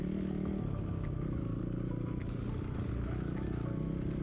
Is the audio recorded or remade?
recorded